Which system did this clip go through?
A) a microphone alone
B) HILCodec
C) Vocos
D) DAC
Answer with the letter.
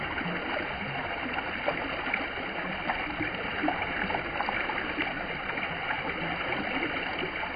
A